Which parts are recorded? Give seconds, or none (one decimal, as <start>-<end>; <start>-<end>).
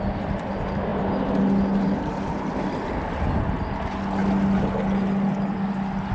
0.0-6.1